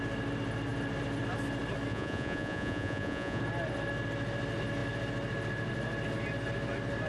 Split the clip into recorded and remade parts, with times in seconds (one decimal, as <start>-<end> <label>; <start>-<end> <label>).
0.0-1.9 recorded; 1.9-3.4 remade; 3.4-7.1 recorded